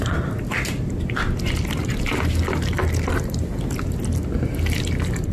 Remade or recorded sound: recorded